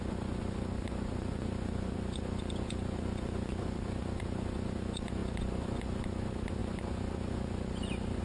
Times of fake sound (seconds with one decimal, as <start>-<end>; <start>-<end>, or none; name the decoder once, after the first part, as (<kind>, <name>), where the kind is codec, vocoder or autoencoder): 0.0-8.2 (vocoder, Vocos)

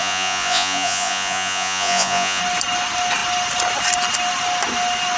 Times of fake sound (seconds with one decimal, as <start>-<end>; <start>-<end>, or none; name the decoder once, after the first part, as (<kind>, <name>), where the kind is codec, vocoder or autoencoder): 0.0-2.4 (vocoder, Vocos)

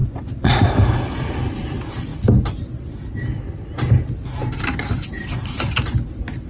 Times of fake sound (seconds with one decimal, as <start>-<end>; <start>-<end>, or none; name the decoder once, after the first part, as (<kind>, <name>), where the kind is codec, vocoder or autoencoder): 0.0-0.7 (vocoder, Vocos)

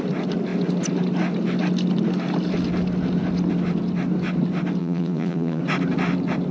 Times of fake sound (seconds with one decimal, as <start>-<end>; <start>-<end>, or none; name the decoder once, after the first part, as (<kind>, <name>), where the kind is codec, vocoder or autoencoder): 4.8-5.6 (vocoder, Vocos)

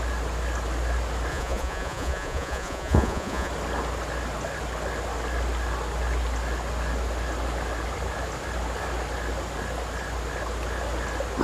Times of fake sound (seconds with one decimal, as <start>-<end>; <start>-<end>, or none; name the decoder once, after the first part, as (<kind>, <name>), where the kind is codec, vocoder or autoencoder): 1.3-3.5 (vocoder, Vocos)

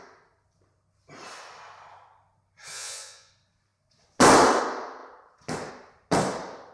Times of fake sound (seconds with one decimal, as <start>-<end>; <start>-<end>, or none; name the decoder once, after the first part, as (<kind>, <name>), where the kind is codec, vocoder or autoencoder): 2.7-3.3 (vocoder, Vocos)

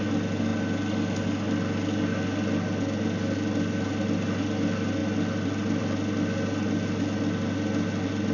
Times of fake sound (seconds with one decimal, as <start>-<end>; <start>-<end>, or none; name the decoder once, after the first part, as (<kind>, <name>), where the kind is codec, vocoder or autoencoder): none